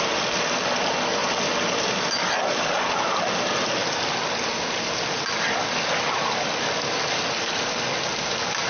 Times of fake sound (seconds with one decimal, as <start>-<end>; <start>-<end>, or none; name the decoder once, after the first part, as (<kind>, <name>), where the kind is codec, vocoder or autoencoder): none